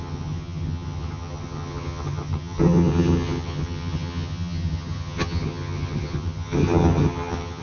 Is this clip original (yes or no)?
no